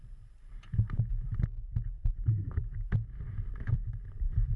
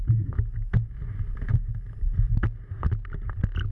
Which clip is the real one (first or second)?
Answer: second